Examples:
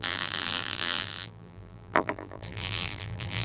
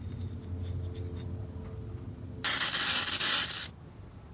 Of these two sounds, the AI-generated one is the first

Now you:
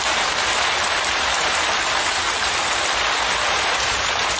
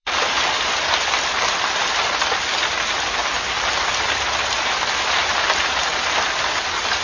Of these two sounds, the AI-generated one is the second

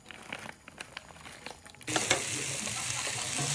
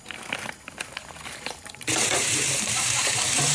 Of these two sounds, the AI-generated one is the second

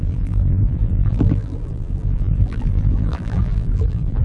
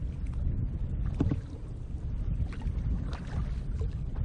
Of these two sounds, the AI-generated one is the first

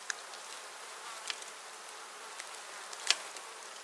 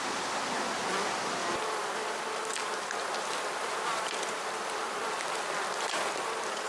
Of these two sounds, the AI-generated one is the second